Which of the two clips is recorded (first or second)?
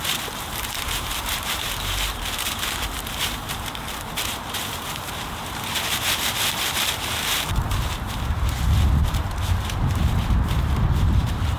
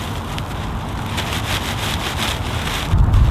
second